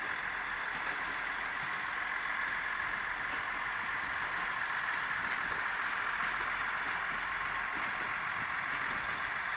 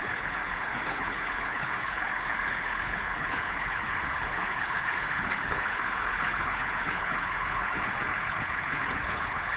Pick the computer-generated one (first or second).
second